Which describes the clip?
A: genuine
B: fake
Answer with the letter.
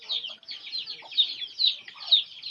A